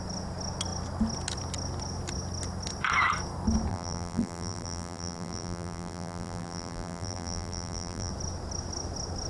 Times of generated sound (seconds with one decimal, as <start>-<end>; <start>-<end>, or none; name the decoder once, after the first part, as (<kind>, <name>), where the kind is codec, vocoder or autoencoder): 3.7-8.1 (vocoder, BigVGAN v2)